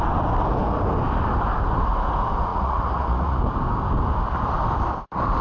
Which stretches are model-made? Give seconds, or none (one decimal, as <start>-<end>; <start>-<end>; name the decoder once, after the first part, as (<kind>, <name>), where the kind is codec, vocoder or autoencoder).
2.5-3.4 (vocoder, Vocos)